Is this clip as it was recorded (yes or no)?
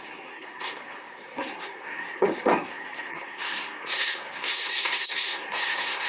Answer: no